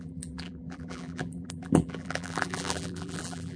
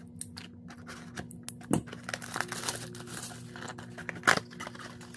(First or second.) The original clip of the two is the second